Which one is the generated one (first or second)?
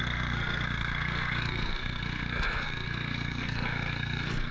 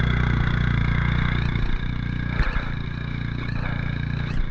first